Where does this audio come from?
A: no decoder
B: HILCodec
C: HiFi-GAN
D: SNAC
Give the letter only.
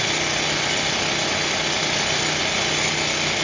A